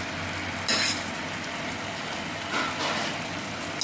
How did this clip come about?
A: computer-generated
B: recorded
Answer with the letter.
B